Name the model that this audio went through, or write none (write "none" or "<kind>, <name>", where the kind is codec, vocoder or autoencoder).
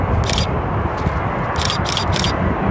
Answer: none